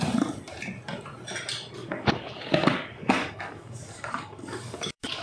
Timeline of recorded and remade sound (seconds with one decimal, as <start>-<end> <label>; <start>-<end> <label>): 0.0-1.8 recorded; 1.8-5.2 remade